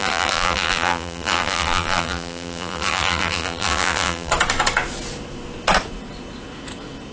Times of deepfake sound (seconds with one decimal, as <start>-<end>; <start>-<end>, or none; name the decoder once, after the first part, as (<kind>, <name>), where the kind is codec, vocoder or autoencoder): 0.0-4.3 (vocoder, BigVGAN v2)